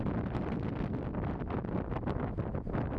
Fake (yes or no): no